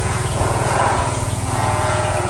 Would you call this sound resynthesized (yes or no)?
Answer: yes